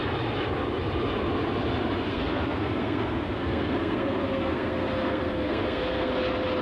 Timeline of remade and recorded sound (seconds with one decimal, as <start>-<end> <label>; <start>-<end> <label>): 0.0-2.1 recorded; 2.1-6.1 remade; 6.1-6.6 recorded